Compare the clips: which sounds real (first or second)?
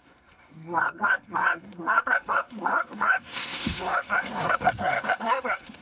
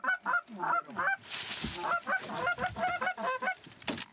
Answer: second